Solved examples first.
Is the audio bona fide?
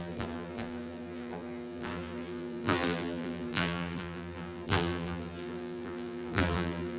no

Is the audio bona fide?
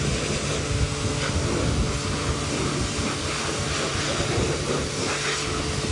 yes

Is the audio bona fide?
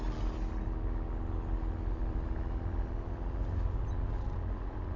yes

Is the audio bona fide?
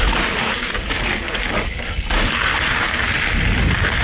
yes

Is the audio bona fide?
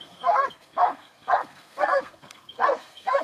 no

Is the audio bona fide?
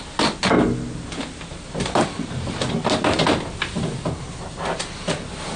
yes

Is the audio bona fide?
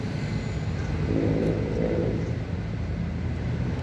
yes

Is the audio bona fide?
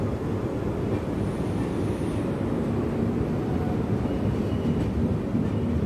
yes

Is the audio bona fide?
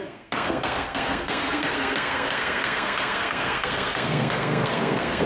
no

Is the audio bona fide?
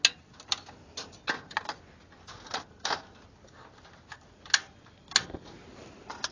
yes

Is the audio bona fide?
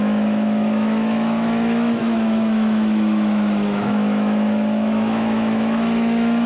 no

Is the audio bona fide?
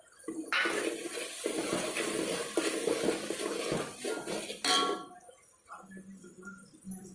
yes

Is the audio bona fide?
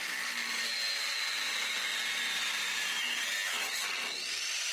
yes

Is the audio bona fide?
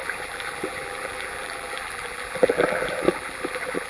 no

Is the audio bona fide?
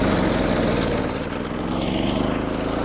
yes